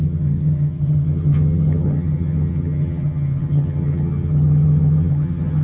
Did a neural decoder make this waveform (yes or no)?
yes